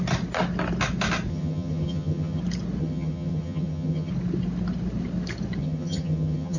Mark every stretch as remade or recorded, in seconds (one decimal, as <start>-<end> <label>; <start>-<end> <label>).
0.0-1.3 recorded; 1.3-2.4 remade; 2.4-2.8 recorded; 2.8-4.1 remade; 4.1-5.6 recorded; 5.6-6.6 remade